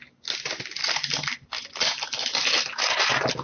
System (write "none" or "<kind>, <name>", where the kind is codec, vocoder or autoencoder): none